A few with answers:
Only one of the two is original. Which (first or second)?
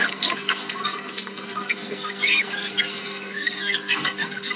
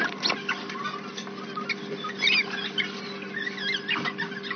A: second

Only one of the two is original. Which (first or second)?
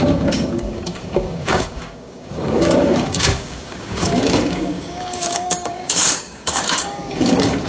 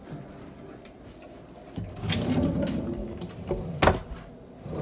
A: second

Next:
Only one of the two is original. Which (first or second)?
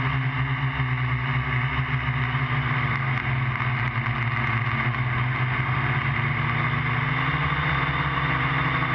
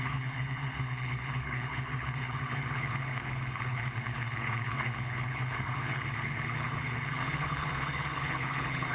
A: first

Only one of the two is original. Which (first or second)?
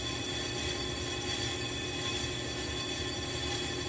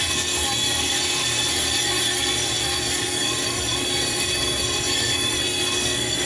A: first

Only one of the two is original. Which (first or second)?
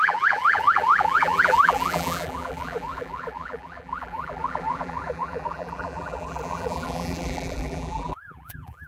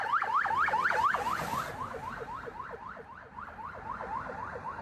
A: second